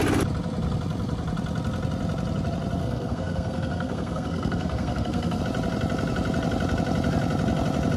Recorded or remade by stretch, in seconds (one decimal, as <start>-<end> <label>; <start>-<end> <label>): 0.0-2.8 recorded; 2.8-5.4 remade; 5.4-8.0 recorded